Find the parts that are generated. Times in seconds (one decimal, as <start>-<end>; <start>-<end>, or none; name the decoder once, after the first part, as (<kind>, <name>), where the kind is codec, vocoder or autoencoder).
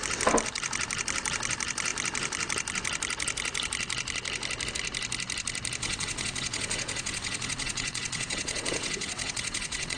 5.8-10.0 (vocoder, WaveNeXt)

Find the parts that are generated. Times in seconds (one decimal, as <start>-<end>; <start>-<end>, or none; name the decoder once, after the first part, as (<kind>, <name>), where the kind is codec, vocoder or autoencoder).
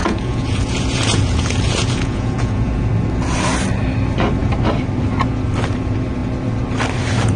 0.0-2.9 (vocoder, Vocos)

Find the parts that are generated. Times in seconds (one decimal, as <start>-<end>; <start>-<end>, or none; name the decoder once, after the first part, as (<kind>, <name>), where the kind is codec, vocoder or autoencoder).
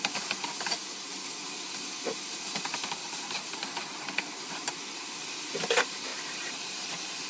3.0-4.9 (vocoder, BigVGAN v2); 6.1-7.3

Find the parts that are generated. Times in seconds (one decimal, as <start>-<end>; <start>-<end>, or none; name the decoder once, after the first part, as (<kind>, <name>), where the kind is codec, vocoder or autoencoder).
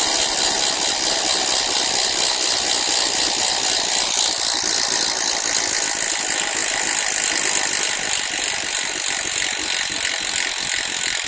none